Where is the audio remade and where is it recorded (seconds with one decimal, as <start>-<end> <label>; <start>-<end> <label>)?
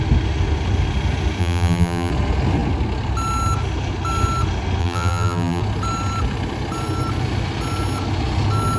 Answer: 0.0-1.4 recorded; 1.4-2.1 remade; 2.1-4.8 recorded; 4.8-5.6 remade; 5.6-8.8 recorded